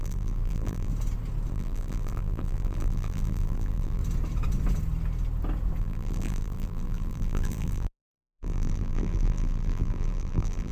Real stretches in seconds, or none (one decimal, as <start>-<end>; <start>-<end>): 0.9-1.5; 4.0-5.8